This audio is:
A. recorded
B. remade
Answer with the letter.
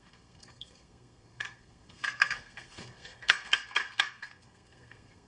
B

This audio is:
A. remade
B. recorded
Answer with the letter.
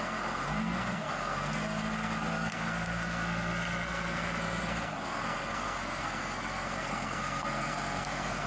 A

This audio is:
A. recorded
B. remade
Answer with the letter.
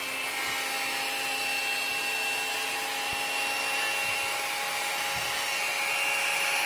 A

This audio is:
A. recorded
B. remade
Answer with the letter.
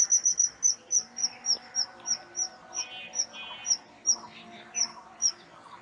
A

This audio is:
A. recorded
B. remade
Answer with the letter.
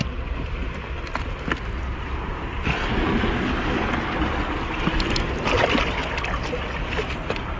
A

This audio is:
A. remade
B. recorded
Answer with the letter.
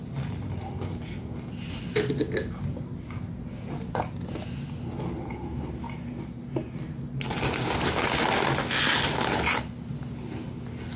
B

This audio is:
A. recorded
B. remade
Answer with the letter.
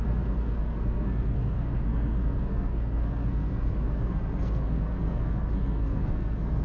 B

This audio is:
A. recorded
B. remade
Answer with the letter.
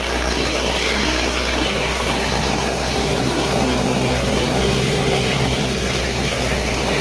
B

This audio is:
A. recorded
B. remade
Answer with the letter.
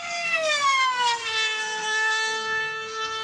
B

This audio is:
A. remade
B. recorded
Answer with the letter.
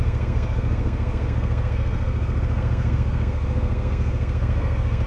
A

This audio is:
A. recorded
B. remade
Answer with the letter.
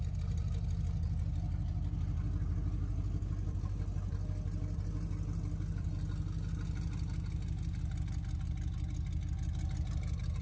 A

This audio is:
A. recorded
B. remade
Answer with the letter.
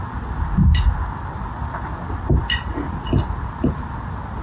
A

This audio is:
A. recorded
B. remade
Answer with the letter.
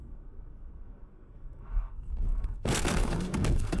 B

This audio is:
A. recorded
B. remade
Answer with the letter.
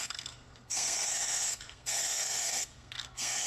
B